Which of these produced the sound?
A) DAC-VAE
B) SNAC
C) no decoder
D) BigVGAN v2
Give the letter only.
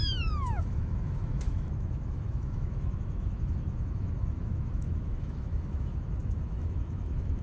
A